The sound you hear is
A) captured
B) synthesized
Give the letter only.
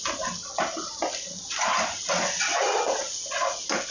A